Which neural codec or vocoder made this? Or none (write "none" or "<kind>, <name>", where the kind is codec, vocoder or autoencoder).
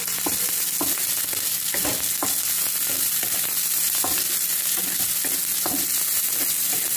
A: none